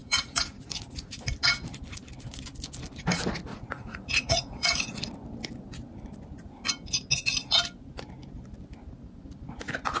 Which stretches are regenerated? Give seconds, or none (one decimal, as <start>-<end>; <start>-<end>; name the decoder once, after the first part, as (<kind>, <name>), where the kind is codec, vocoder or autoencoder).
0.0-1.1 (vocoder, Vocos); 3.5-5.0